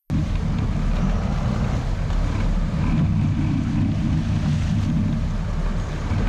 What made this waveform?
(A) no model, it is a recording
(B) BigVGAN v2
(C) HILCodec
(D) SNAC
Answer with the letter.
A